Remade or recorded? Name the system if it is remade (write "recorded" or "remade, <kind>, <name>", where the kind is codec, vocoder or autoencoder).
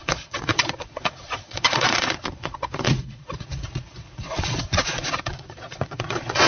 remade, vocoder, Vocos